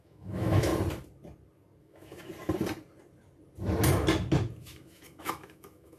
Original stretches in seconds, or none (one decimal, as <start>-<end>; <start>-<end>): 0.7-1.8; 2.3-4.6